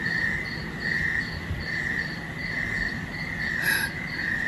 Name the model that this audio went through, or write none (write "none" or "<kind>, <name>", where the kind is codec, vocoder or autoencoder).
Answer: none